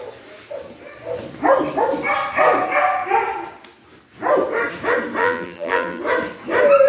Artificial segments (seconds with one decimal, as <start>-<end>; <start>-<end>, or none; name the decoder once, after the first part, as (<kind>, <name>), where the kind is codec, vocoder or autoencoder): 5.2-6.0 (vocoder, BigVGAN v2)

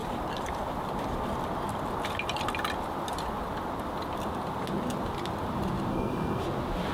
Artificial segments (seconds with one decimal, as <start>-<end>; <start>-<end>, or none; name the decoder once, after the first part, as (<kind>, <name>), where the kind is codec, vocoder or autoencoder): 5.9-6.4 (codec, SNAC)

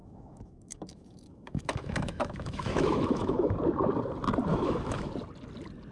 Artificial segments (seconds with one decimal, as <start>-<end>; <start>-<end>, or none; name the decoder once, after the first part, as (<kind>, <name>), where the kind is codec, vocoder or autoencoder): 0.0-3.5 (autoencoder, DAC-VAE); 4.5-5.1

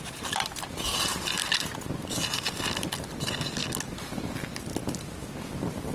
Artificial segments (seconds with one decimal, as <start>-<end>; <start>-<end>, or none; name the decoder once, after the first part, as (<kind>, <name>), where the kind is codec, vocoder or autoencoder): none

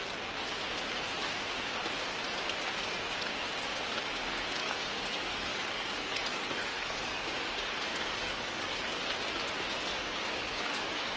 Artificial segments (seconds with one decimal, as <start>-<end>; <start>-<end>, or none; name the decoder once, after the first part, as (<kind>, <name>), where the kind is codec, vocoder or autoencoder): 4.6-8.7 (codec, DAC); 9.9-11.2

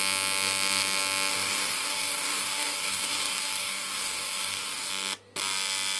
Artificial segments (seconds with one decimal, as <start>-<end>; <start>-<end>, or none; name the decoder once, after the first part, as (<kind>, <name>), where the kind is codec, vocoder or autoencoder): 1.3-4.9 (codec, DAC)

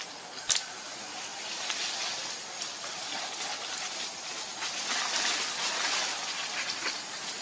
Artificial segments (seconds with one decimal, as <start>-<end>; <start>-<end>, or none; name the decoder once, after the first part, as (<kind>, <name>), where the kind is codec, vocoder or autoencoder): none